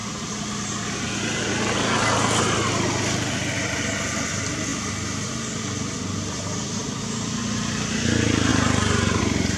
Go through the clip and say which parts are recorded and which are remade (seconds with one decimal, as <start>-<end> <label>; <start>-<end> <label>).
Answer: 0.0-9.6 recorded